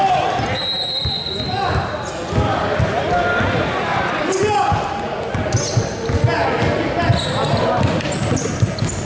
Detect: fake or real real